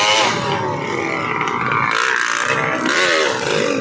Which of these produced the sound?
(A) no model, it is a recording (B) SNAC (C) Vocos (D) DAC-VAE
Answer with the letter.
A